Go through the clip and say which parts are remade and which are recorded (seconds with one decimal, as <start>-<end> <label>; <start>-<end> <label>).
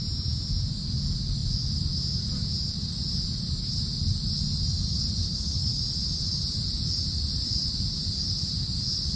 0.0-5.2 recorded; 5.2-5.8 remade; 5.8-9.2 recorded